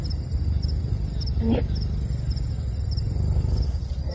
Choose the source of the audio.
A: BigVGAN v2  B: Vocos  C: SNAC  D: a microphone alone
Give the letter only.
A